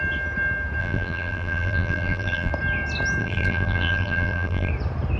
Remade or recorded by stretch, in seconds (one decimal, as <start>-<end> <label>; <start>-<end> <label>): 0.0-0.8 recorded; 0.8-2.5 remade; 2.5-3.2 recorded; 3.2-4.7 remade; 4.7-5.2 recorded